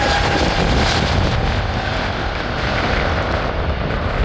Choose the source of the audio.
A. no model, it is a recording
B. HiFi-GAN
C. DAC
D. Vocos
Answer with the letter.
A